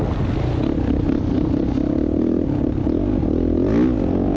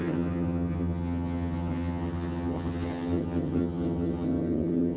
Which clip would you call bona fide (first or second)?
first